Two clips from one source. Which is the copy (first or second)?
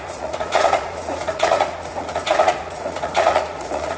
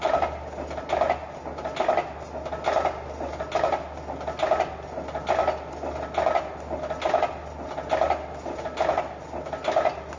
first